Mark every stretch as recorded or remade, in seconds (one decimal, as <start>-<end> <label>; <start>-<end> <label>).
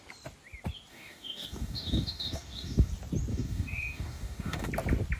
0.0-0.9 recorded; 0.9-2.9 remade; 2.9-3.3 recorded; 3.3-4.7 remade; 4.7-5.2 recorded